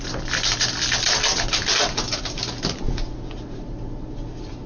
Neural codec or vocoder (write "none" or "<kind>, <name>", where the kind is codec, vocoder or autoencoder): none